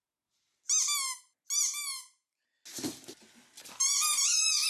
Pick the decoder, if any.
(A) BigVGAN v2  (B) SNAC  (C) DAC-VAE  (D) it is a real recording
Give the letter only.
D